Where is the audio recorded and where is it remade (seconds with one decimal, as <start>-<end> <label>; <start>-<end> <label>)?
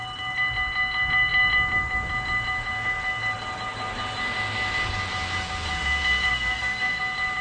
0.0-6.3 recorded; 6.3-7.0 remade; 7.0-7.4 recorded